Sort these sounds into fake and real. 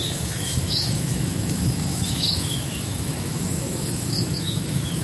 fake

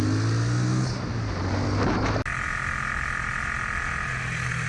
real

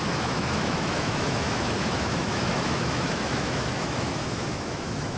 fake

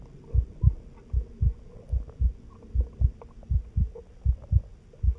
real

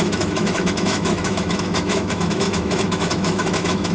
fake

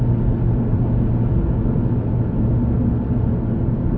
real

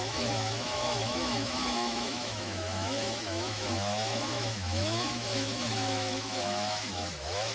fake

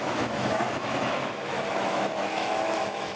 fake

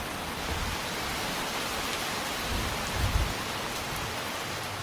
real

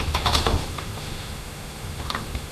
fake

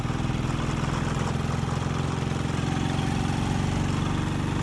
real